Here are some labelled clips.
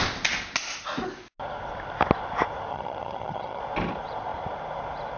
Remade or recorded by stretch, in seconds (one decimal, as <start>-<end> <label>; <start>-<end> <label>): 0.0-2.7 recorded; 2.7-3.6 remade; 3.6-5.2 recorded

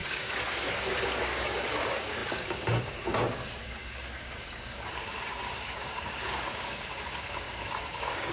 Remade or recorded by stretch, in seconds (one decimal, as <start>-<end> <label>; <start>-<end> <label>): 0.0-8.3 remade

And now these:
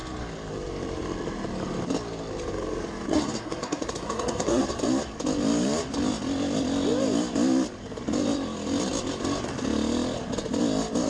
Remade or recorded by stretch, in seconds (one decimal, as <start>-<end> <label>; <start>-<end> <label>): 0.0-3.1 recorded; 3.1-4.6 remade; 4.6-11.1 recorded